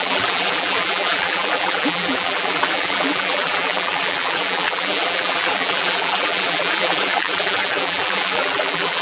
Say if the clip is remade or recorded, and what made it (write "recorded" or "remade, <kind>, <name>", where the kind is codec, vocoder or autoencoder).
remade, vocoder, BigVGAN v2